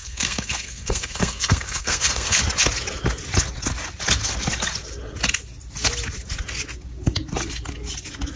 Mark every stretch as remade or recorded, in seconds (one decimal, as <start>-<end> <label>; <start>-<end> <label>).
0.0-2.4 remade; 2.4-8.4 recorded